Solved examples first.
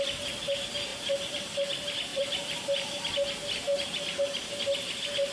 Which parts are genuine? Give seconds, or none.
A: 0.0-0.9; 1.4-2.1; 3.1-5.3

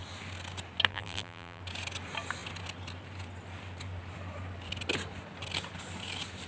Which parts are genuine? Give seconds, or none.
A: 0.0-0.9; 1.6-6.5

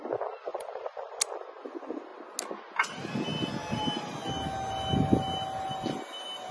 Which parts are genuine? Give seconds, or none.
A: 0.0-0.5; 1.1-6.5

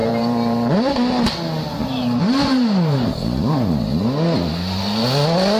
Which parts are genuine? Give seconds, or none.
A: 0.9-1.8; 3.7-5.6

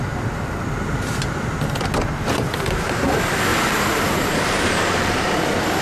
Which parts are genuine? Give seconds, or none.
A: 0.0-3.5; 5.1-5.8

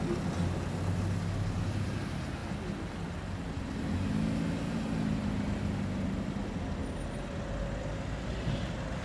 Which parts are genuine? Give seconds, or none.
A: 0.0-9.0